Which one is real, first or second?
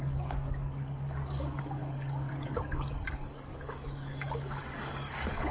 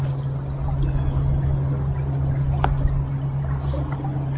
second